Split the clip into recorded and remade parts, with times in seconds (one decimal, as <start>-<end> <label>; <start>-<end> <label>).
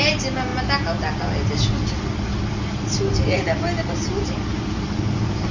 0.0-5.5 recorded